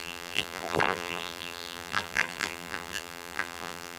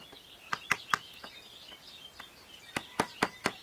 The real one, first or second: second